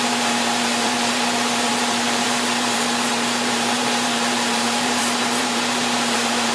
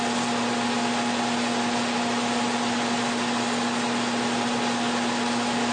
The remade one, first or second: first